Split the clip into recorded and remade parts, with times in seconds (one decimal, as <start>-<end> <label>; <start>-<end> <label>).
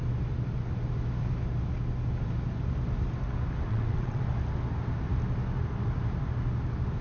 0.0-3.7 recorded; 3.7-4.2 remade; 4.2-7.0 recorded